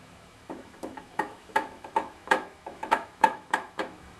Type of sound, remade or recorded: remade